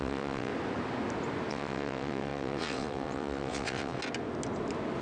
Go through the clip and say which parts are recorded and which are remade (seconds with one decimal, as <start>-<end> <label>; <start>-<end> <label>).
0.0-0.5 remade; 0.5-1.5 recorded; 1.5-4.0 remade; 4.0-5.0 recorded